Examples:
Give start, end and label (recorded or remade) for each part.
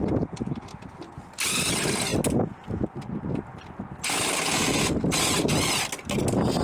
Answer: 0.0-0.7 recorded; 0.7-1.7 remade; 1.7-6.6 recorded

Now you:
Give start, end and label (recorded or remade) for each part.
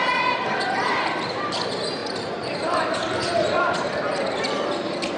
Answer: 0.0-5.2 recorded